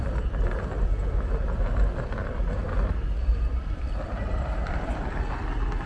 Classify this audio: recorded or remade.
recorded